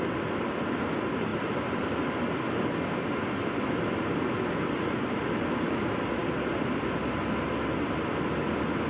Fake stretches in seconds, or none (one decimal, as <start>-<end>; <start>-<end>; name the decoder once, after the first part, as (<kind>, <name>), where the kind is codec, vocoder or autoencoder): none